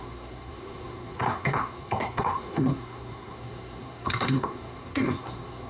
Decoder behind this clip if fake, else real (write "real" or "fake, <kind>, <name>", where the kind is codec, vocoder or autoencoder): fake, codec, SNAC